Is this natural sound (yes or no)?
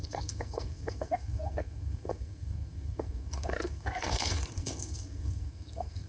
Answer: no